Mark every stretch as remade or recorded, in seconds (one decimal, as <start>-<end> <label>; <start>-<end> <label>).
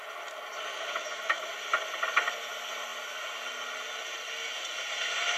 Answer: 0.0-0.7 recorded; 0.7-1.4 remade; 1.4-5.4 recorded